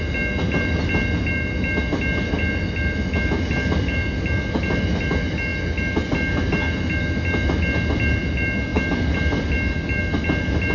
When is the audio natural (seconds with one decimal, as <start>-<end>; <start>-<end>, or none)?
0.0-10.7